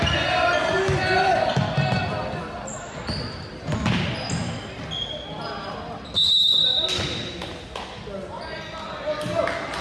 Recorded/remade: recorded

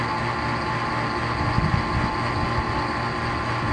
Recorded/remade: recorded